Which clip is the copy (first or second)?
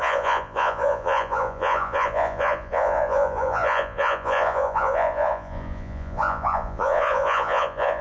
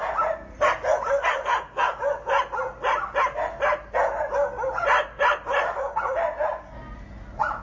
first